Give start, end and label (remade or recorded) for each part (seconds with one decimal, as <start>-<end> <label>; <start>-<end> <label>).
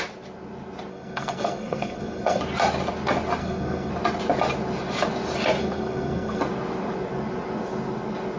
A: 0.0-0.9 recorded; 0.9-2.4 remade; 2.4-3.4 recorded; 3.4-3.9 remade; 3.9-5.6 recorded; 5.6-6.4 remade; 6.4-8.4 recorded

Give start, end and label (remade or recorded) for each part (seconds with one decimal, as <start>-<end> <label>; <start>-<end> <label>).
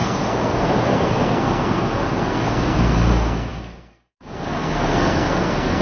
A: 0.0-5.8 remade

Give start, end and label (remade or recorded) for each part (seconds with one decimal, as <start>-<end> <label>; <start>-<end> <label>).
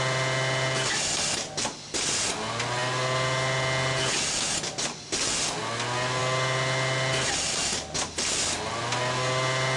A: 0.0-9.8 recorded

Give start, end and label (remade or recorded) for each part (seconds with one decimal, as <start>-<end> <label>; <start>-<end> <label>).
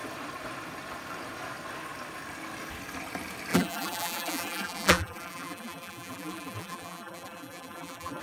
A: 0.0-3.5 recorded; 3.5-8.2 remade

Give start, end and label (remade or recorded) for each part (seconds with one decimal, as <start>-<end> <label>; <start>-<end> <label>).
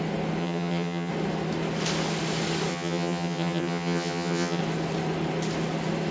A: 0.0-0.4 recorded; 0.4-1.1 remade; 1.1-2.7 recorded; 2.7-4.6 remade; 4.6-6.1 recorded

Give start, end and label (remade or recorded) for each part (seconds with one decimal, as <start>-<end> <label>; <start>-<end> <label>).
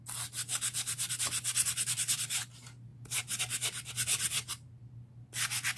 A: 0.0-5.8 recorded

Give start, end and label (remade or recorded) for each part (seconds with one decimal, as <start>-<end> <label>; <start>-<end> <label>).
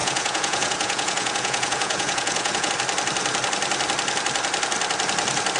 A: 0.0-2.7 remade; 2.7-5.6 recorded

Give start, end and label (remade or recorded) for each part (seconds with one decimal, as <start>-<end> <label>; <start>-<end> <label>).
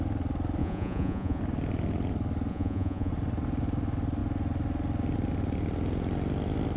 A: 0.0-0.6 recorded; 0.6-1.4 remade; 1.4-2.5 recorded; 2.5-3.1 remade; 3.1-6.8 recorded